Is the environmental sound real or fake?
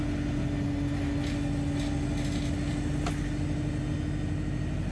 real